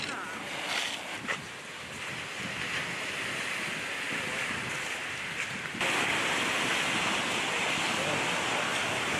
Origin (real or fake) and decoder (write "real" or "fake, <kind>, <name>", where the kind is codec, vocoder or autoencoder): real